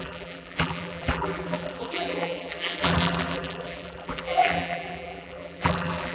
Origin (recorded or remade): remade